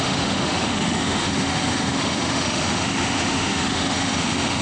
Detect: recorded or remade remade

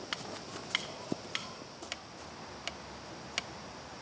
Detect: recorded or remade recorded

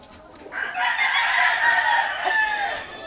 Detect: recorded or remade recorded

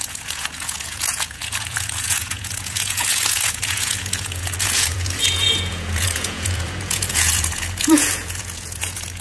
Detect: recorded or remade remade